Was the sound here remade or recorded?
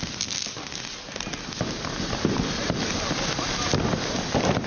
recorded